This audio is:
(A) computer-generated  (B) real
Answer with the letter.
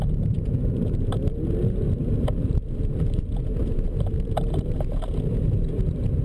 A